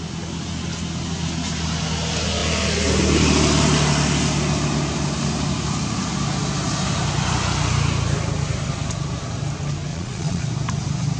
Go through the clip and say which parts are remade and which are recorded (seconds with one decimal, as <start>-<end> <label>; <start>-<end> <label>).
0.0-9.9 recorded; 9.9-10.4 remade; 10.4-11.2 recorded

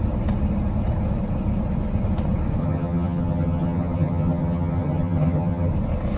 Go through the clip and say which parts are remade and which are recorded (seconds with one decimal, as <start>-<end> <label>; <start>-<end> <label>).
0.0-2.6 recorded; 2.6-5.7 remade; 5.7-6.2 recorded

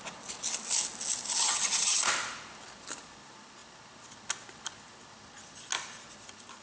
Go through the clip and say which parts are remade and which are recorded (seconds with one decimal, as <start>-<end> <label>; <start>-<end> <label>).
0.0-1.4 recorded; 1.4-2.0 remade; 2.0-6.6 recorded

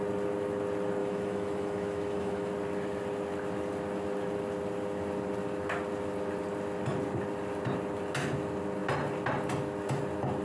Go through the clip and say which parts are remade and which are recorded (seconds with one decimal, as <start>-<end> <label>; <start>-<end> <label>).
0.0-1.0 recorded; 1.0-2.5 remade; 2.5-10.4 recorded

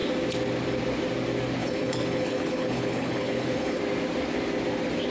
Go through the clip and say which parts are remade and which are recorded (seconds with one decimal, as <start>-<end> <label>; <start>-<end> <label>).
0.0-1.6 recorded; 1.6-3.8 remade; 3.8-5.1 recorded